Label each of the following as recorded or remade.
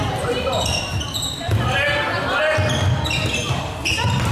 recorded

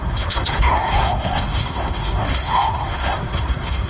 remade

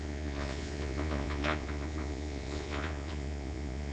remade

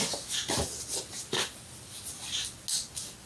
recorded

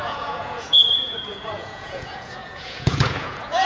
remade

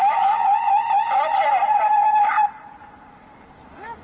recorded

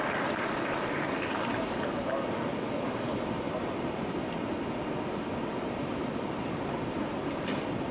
recorded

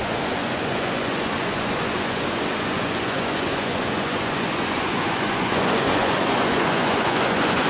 remade